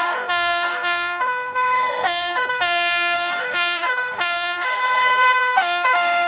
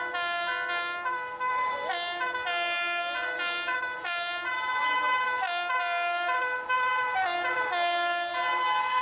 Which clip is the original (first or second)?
second